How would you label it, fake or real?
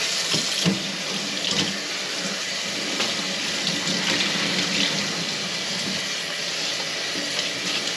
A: real